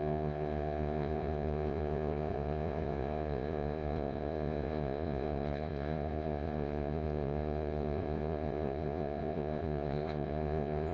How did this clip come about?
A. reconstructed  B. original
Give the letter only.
A